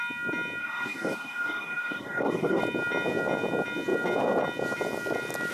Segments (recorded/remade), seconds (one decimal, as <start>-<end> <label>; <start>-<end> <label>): 0.0-0.6 recorded; 0.6-2.6 remade; 2.6-5.5 recorded